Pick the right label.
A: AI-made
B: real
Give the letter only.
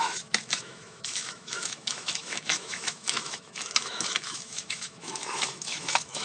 A